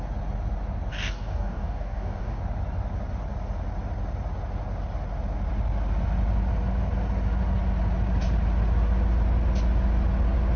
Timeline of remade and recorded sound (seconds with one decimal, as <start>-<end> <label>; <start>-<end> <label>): 0.0-0.9 recorded; 0.9-2.4 remade; 2.4-10.6 recorded